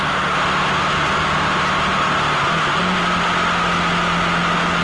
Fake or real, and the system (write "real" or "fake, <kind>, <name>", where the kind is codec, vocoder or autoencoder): real